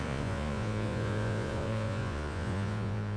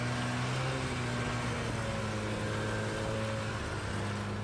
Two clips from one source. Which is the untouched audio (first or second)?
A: second